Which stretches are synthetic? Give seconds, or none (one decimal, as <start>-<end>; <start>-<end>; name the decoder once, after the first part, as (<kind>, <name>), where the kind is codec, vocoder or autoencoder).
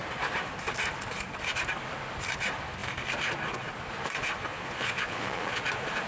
4.5-5.6 (vocoder, Vocos)